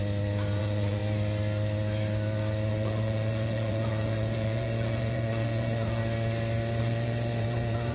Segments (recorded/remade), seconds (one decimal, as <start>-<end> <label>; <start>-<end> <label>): 0.0-0.6 recorded; 0.6-1.0 remade; 1.0-2.7 recorded; 2.7-6.0 remade; 6.0-6.8 recorded; 6.8-7.9 remade

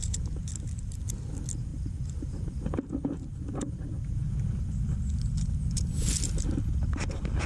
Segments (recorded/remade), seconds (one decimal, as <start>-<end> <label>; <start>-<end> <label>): 0.0-1.7 recorded; 1.7-2.6 remade; 2.6-7.5 recorded

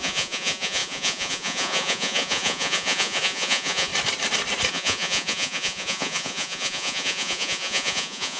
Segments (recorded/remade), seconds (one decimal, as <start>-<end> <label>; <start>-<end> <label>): 0.0-3.9 remade; 3.9-4.7 recorded; 4.7-8.4 remade

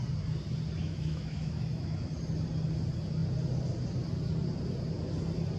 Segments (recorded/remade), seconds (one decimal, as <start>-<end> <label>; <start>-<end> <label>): 0.0-0.8 recorded; 0.8-2.1 remade; 2.1-5.6 recorded